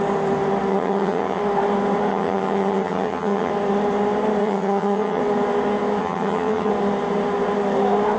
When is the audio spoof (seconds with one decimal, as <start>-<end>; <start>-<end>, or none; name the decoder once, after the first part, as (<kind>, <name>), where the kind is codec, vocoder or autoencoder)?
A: 0.7-1.4 (vocoder, HiFi-GAN); 2.1-3.5; 4.4-5.2; 6.0-6.7